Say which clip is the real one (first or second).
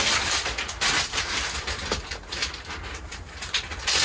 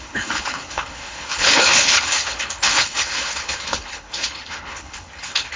first